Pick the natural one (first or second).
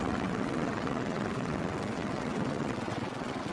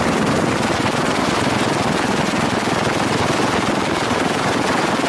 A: second